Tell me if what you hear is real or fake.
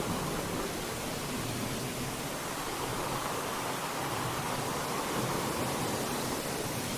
real